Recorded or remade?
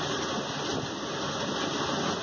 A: recorded